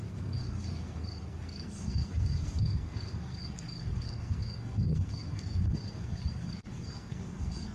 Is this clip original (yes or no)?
no